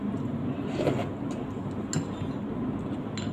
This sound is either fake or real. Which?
real